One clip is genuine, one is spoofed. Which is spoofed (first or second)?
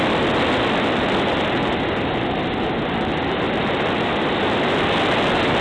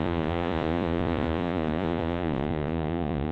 second